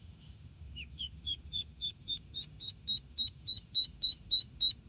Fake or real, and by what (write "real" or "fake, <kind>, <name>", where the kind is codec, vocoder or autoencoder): fake, autoencoder, DAC-VAE